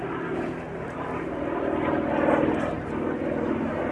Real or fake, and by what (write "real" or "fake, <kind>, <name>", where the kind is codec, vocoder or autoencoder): real